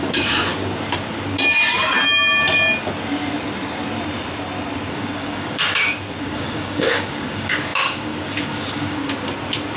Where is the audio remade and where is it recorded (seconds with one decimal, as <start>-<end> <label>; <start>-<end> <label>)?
0.0-0.5 remade; 0.5-4.9 recorded; 4.9-9.0 remade; 9.0-9.8 recorded